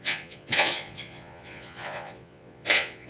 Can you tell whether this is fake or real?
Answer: fake